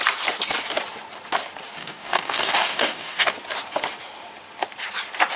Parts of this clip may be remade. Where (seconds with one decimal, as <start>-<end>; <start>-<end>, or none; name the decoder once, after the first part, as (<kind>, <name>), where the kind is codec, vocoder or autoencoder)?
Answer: 1.8-3.3 (codec, DAC)